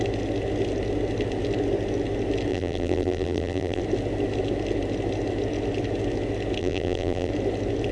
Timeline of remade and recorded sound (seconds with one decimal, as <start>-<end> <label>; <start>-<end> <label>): 0.0-2.5 recorded; 2.5-3.8 remade; 3.8-6.6 recorded; 6.6-7.3 remade; 7.3-7.9 recorded